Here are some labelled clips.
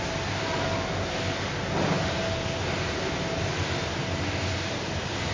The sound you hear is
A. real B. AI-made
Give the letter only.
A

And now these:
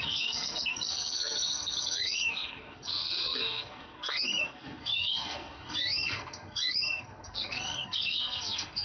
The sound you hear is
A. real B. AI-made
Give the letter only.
B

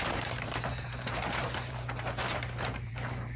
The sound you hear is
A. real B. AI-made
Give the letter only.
B